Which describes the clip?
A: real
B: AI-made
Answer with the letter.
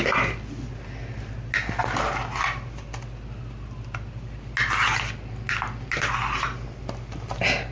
A